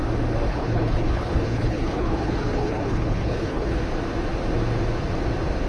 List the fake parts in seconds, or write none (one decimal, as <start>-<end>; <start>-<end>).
0.5-3.8